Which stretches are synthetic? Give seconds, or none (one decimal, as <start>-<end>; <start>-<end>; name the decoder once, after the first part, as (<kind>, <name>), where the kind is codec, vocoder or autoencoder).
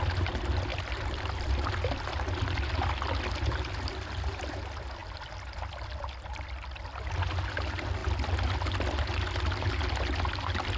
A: none